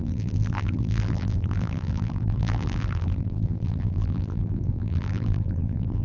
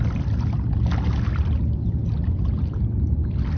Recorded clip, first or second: second